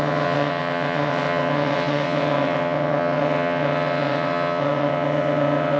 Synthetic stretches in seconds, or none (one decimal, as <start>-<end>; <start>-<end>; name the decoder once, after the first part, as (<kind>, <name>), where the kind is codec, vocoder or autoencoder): 0.0-5.8 (vocoder, WaveNeXt)